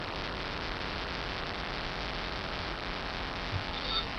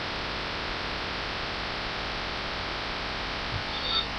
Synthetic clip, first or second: first